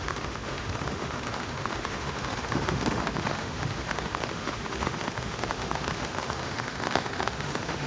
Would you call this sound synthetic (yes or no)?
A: yes